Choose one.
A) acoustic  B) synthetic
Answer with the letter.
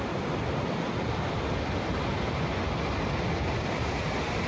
A